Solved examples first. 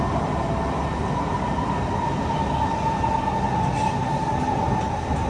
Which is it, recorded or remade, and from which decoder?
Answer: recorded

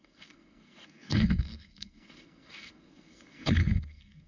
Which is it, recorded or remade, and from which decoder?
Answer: remade, codec, SNAC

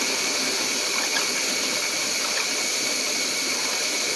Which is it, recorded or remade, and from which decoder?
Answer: recorded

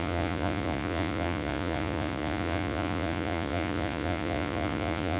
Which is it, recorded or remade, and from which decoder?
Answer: remade, vocoder, Vocos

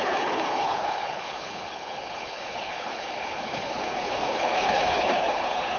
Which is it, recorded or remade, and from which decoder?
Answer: remade, codec, HILCodec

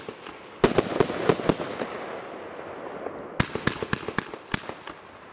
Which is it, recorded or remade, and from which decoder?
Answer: recorded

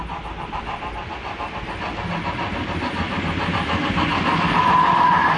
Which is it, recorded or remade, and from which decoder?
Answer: recorded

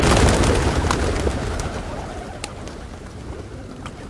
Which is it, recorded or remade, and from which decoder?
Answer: recorded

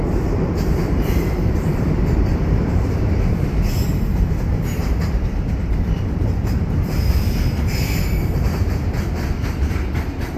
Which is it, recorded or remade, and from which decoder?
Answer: remade, vocoder, BigVGAN v2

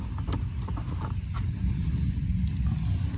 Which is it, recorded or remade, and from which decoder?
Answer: recorded